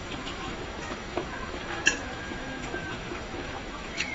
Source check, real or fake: fake